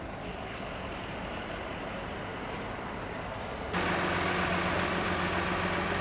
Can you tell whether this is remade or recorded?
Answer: recorded